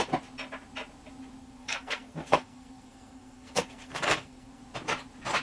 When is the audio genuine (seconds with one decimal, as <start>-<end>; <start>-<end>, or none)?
0.0-1.4; 4.6-5.4